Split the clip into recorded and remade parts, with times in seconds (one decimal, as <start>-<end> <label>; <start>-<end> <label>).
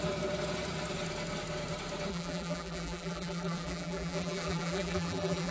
0.0-2.1 recorded; 2.1-5.5 remade